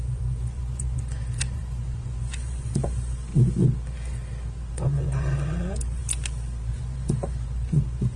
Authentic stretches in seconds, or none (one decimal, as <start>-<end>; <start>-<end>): 3.3-4.7; 6.0-6.7